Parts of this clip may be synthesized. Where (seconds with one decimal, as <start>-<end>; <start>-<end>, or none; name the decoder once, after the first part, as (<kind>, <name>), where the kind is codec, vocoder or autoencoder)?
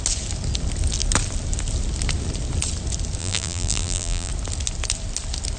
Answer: 3.2-4.3 (vocoder, BigVGAN v2)